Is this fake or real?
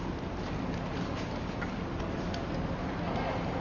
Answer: real